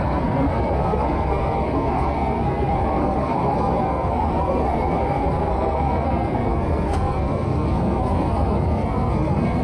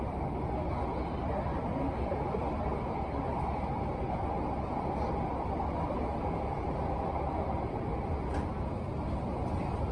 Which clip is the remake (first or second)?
first